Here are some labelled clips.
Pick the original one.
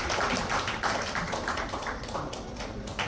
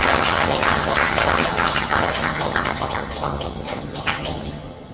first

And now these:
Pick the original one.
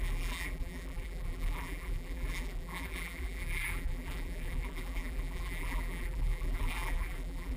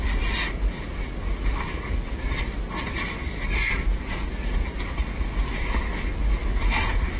second